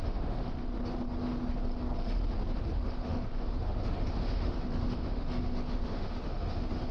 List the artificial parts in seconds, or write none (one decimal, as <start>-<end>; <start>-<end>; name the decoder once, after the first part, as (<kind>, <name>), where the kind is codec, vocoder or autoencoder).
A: 0.0-0.7 (autoencoder, DAC-VAE); 2.7-6.9